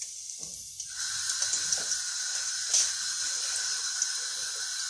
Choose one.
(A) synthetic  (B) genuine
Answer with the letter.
B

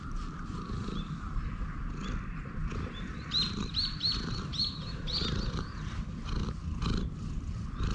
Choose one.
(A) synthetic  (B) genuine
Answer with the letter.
A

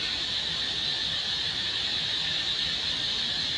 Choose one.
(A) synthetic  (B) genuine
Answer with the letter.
B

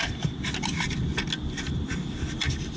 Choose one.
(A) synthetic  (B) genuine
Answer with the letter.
B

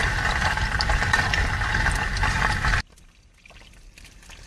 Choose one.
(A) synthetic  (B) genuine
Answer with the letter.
A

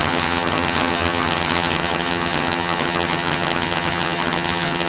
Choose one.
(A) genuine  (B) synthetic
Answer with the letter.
B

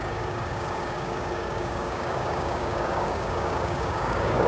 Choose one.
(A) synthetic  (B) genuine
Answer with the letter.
A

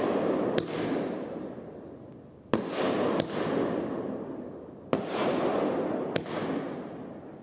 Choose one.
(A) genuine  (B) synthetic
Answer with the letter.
A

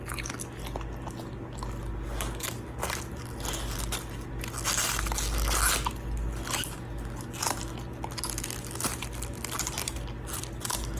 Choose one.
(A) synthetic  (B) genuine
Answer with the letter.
B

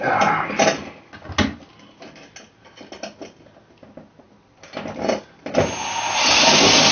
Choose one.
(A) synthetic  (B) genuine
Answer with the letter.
B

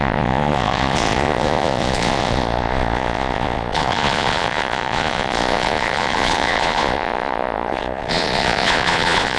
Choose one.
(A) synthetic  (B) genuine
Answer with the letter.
A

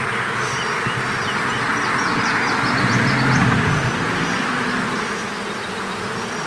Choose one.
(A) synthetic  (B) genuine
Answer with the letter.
B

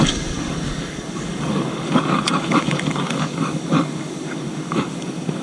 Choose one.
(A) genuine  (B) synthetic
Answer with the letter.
B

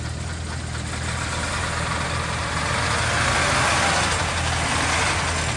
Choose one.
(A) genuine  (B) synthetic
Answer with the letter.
A